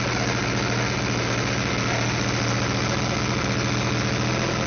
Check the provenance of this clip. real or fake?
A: real